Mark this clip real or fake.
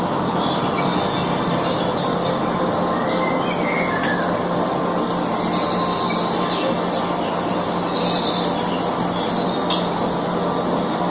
real